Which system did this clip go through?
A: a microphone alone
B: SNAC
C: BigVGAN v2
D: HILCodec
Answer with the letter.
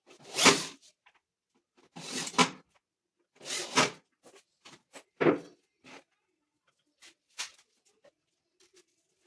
A